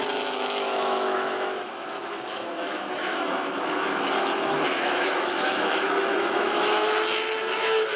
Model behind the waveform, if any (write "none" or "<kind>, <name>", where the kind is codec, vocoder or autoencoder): autoencoder, DAC-VAE